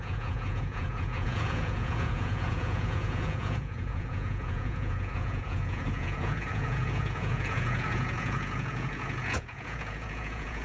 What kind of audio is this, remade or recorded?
remade